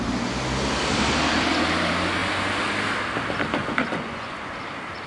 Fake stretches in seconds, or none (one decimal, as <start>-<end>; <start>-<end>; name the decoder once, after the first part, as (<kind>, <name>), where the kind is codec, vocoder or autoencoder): 3.6-4.5 (vocoder, Vocos)